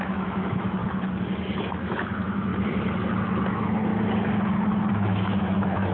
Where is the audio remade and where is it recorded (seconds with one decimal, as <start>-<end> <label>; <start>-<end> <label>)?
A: 0.0-0.8 remade; 0.8-1.6 recorded; 1.6-2.5 remade; 2.5-3.5 recorded; 3.5-3.9 remade; 3.9-4.9 recorded; 4.9-5.9 remade